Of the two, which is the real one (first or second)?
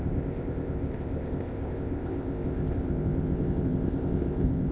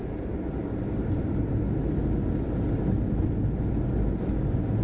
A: second